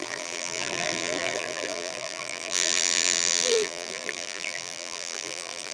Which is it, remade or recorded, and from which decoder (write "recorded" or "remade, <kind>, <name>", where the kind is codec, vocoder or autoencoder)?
remade, vocoder, BigVGAN v2